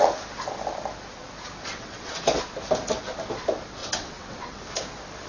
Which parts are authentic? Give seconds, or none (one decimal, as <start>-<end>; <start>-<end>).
0.0-1.6; 2.4-3.8; 4.6-5.3